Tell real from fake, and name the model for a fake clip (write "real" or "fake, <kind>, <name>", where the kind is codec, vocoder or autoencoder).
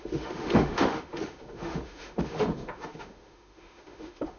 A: fake, autoencoder, DAC-VAE